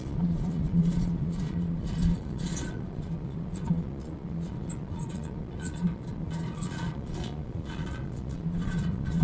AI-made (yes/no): yes